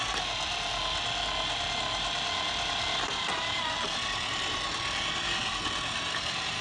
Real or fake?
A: real